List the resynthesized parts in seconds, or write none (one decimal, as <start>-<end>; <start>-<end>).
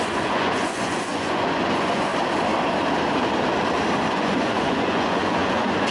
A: 0.0-2.1; 4.1-5.9